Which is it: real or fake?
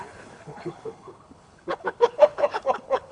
fake